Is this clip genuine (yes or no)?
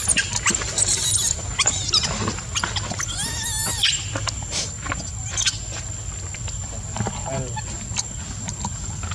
yes